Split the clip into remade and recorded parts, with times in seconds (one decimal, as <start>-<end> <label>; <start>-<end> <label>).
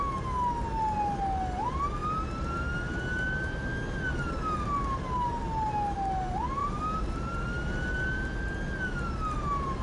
0.0-2.0 recorded; 2.0-2.6 remade; 2.6-6.6 recorded; 6.6-7.7 remade; 7.7-9.8 recorded